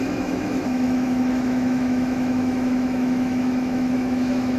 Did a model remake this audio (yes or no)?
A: yes